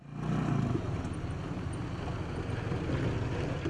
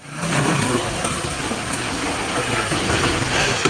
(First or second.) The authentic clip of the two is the first